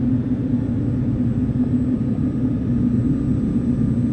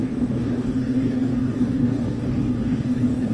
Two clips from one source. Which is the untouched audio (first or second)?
first